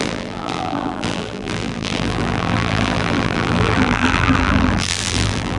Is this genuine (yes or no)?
no